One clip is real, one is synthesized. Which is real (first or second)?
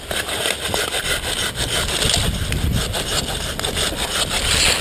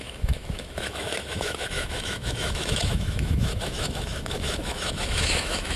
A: first